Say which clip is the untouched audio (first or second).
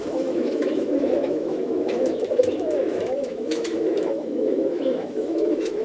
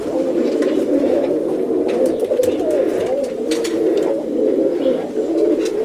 second